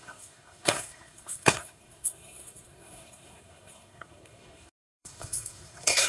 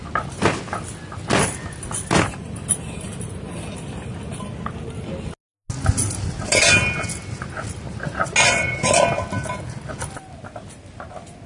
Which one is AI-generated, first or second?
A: first